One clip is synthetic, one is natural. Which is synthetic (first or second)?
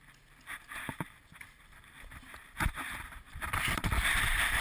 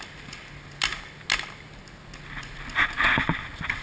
first